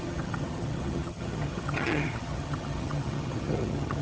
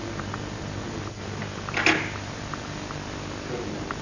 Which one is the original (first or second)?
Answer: second